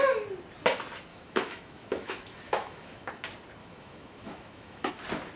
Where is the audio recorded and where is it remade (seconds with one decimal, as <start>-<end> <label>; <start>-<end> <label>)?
0.0-1.1 recorded; 1.1-3.1 remade; 3.1-3.6 recorded; 3.6-4.9 remade; 4.9-5.4 recorded

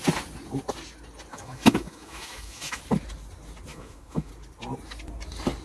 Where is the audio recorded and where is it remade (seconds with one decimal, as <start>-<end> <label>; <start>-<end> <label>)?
0.0-1.3 recorded; 1.3-2.8 remade; 2.8-3.7 recorded; 3.7-4.3 remade; 4.3-5.6 recorded

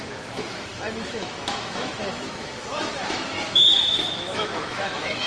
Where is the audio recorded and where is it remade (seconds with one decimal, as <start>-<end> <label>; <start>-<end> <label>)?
0.0-5.3 remade

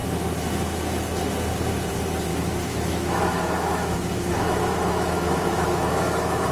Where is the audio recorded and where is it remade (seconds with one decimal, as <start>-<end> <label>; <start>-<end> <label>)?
0.0-2.3 recorded; 2.3-6.5 remade

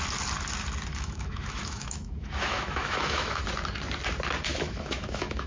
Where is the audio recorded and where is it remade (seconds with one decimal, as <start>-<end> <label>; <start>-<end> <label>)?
0.0-0.9 recorded; 0.9-3.4 remade; 3.4-4.5 recorded; 4.5-5.5 remade